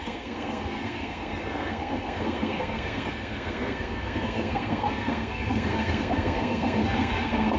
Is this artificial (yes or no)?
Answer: yes